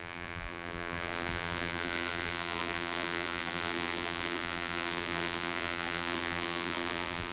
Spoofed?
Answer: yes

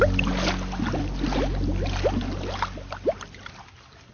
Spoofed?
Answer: no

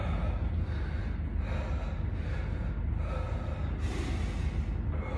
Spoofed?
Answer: no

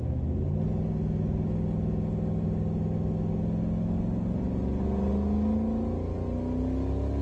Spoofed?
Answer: no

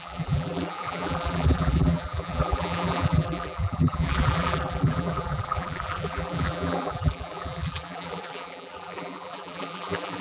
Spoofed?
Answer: yes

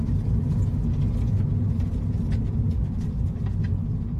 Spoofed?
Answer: no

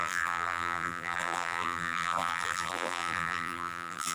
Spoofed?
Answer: yes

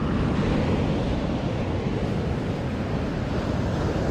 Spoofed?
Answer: no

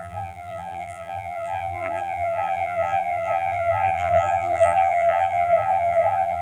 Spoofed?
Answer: yes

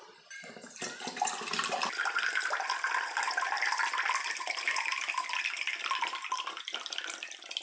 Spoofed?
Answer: yes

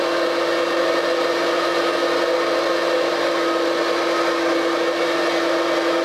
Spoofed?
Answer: no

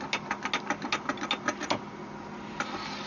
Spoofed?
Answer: no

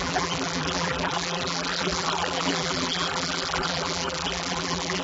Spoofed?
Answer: yes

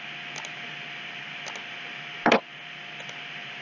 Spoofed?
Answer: no